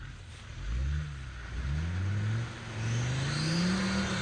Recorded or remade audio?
recorded